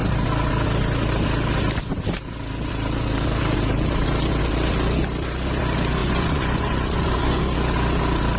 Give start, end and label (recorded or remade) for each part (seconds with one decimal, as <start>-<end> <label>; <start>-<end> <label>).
0.0-6.0 recorded; 6.0-7.4 remade; 7.4-8.4 recorded